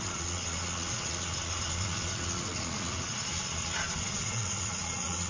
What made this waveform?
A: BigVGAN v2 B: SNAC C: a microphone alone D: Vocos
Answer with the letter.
D